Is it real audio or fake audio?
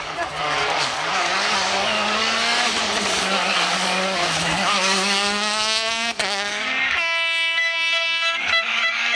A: fake